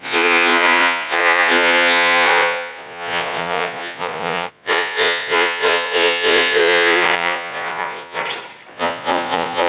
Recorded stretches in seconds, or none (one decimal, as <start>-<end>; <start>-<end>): 8.2-8.7